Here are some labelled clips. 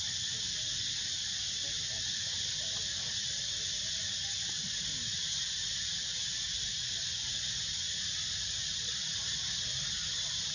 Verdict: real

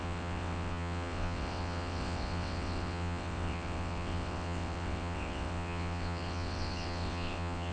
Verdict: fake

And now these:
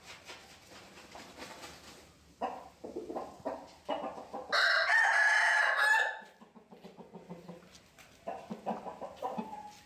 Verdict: real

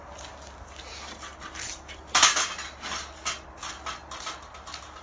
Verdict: real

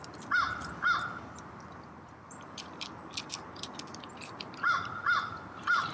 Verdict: fake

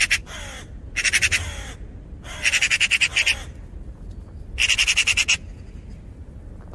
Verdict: real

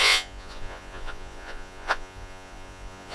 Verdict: fake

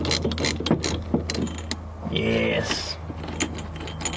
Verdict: real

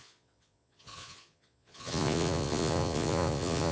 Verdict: fake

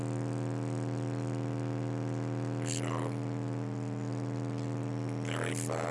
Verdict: real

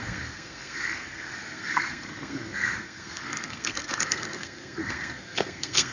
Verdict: fake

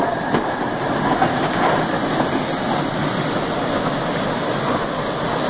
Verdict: real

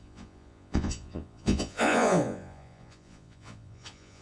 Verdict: fake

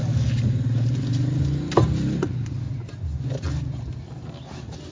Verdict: real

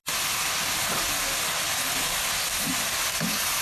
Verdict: real